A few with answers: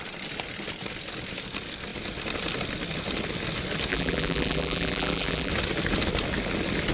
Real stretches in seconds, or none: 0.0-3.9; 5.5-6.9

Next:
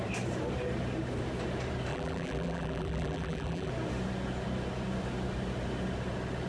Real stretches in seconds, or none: 0.0-1.9; 3.7-6.5

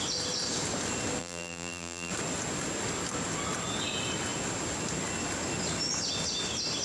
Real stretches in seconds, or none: 0.0-1.2; 2.1-6.8